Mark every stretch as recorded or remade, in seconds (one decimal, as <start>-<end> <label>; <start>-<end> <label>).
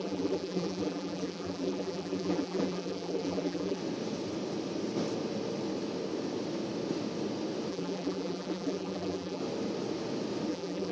0.0-3.8 remade; 3.8-7.7 recorded; 7.7-9.4 remade; 9.4-10.5 recorded; 10.5-10.9 remade